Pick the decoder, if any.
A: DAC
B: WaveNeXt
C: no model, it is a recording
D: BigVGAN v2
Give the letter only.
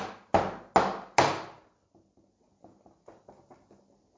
C